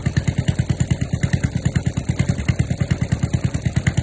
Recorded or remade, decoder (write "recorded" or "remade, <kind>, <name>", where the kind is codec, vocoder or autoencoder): recorded